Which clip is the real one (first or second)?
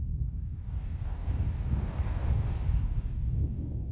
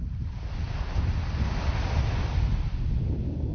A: second